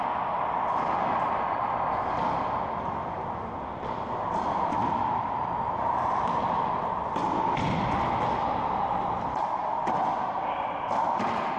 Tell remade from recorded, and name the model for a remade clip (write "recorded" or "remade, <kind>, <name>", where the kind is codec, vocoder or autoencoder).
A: recorded